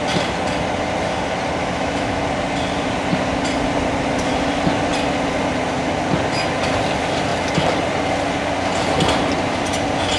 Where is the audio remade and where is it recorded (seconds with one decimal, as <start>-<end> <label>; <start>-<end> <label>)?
0.0-1.6 recorded; 1.6-2.2 remade; 2.2-10.2 recorded